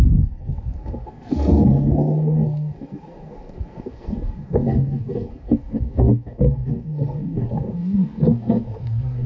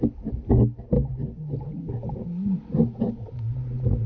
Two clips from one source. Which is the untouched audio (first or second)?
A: second